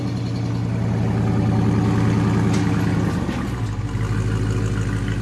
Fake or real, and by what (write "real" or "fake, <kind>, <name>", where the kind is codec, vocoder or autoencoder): real